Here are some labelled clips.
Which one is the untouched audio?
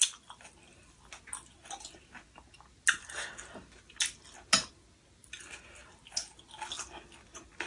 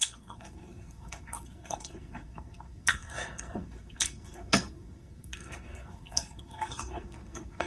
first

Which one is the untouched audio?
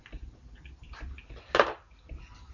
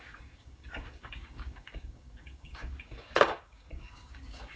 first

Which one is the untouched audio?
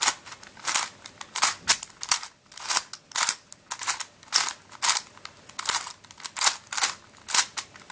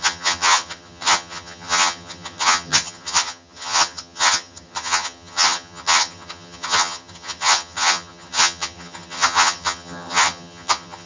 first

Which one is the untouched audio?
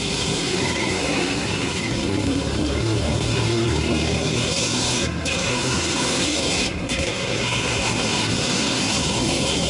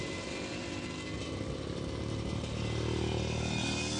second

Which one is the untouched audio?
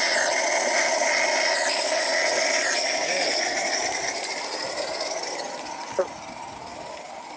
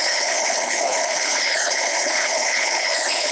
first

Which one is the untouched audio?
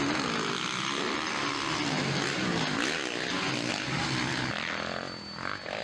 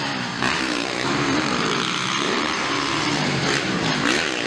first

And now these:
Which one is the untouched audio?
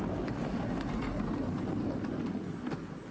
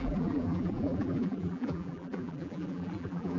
first